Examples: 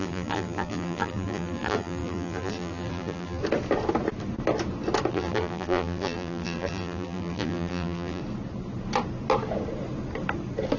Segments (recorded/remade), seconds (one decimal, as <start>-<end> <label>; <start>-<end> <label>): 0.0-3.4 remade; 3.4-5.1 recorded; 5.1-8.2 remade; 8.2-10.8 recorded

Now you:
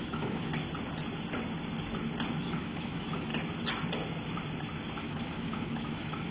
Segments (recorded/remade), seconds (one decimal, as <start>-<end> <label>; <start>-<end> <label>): 0.0-0.5 remade; 0.5-2.4 recorded; 2.4-3.3 remade; 3.3-5.0 recorded; 5.0-6.3 remade

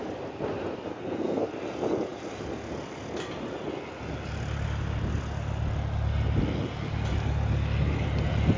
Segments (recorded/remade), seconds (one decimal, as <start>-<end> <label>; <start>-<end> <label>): 0.0-0.9 recorded; 0.9-1.5 remade; 1.5-8.6 recorded

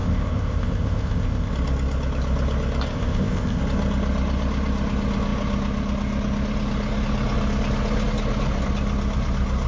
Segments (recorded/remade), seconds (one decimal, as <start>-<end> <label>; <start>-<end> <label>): 0.0-1.5 remade; 1.5-2.9 recorded; 2.9-3.6 remade; 3.6-9.7 recorded

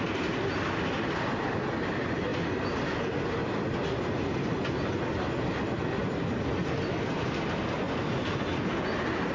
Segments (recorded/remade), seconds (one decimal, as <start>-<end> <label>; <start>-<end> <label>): 0.0-9.3 recorded

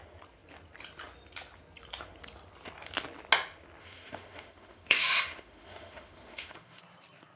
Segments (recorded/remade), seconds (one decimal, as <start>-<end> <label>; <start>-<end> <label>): 0.0-3.8 recorded; 3.8-6.8 remade; 6.8-7.4 recorded